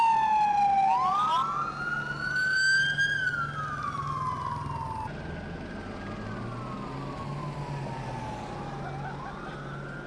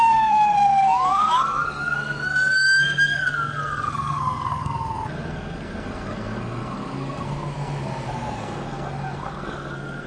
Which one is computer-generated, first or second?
second